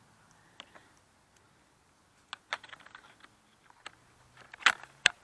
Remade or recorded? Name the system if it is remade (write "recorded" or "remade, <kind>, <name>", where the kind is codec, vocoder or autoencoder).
recorded